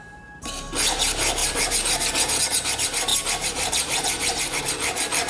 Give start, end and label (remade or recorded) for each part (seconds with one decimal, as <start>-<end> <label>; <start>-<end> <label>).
0.0-1.4 recorded; 1.4-2.4 remade; 2.4-3.1 recorded; 3.1-4.6 remade; 4.6-5.3 recorded